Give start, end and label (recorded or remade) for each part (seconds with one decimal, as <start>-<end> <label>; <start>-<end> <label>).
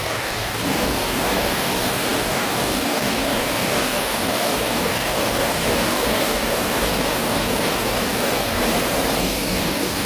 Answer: 0.0-8.6 remade; 8.6-9.2 recorded; 9.2-10.1 remade